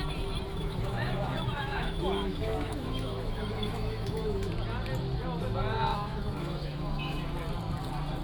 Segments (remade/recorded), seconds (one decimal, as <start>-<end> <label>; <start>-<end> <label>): 0.0-0.5 recorded; 0.5-4.5 remade; 4.5-5.9 recorded; 5.9-7.2 remade; 7.2-8.2 recorded